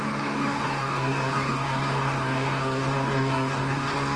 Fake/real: fake